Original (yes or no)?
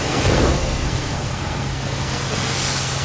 no